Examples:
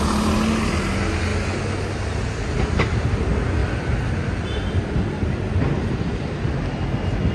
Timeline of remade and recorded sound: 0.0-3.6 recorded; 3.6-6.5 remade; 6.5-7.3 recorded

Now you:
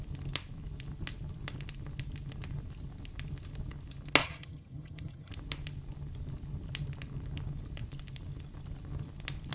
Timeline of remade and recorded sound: 0.0-4.2 recorded; 4.2-5.3 remade; 5.3-9.5 recorded

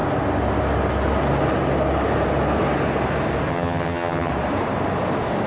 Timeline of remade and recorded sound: 0.0-3.5 recorded; 3.5-4.3 remade; 4.3-5.5 recorded